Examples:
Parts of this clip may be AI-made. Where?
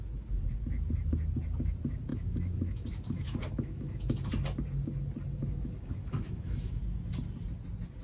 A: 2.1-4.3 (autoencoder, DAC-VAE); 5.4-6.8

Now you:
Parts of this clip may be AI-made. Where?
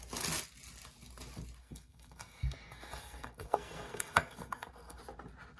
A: 1.6-5.0 (codec, SNAC)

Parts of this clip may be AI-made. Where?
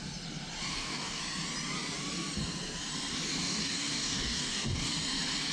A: 0.7-1.2 (codec, DAC); 3.4-4.9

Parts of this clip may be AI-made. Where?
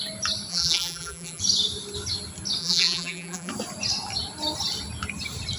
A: 0.5-1.4 (vocoder, BigVGAN v2); 2.6-3.5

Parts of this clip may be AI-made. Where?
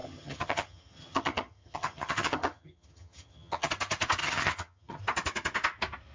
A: 0.0-3.7 (vocoder, HiFi-GAN); 4.2-5.0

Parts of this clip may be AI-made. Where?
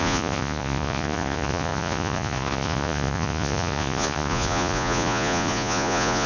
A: 0.0-6.3 (vocoder, Vocos)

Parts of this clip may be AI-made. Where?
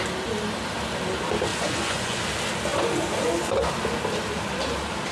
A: 1.5-2.2 (vocoder, Vocos)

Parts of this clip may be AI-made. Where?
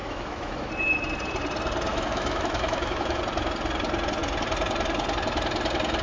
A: 0.0-0.7 (autoencoder, DAC-VAE); 1.9-3.2